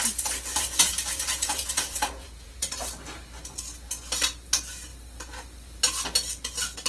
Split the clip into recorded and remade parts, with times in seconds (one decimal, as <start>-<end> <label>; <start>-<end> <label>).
0.0-0.5 recorded; 0.5-2.7 remade; 2.7-6.9 recorded

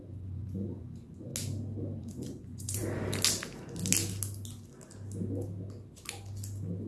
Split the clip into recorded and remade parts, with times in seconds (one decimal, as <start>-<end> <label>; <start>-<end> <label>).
0.0-1.3 remade; 1.3-2.0 recorded; 2.0-2.8 remade; 2.8-6.9 recorded

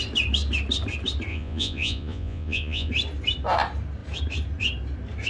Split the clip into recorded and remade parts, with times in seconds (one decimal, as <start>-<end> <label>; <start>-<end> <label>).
0.0-1.3 recorded; 1.3-2.9 remade; 2.9-5.3 recorded

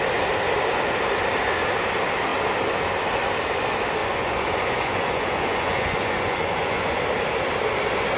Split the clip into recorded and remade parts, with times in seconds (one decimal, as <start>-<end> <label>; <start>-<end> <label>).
0.0-4.0 recorded; 4.0-7.0 remade; 7.0-8.2 recorded

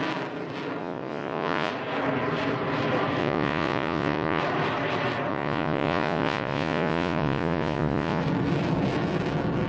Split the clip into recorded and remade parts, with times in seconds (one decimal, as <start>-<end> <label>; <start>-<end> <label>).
0.0-0.8 recorded; 0.8-1.7 remade; 1.7-3.2 recorded; 3.2-4.4 remade; 4.4-5.3 recorded; 5.3-8.2 remade; 8.2-9.7 recorded